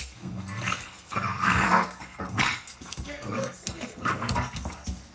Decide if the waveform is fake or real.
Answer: fake